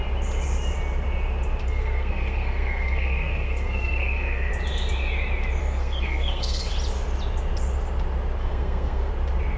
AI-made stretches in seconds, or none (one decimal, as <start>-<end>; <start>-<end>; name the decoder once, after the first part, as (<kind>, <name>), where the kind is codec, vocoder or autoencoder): 1.6-4.5 (codec, SNAC); 5.6-6.7; 8.4-9.1